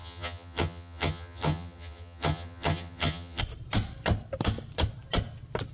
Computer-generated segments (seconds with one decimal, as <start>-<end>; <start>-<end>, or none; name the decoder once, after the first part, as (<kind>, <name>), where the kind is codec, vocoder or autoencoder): 0.0-3.4 (vocoder, HiFi-GAN)